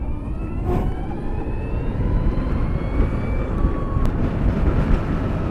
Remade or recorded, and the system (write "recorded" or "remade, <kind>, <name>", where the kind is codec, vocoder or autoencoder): recorded